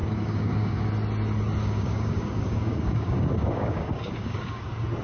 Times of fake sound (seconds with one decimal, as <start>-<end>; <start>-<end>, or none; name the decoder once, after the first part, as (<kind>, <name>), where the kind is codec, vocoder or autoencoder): 0.0-0.9 (codec, DAC); 1.6-4.6